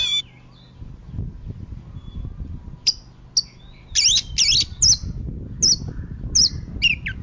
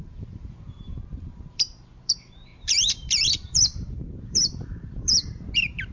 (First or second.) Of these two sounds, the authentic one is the first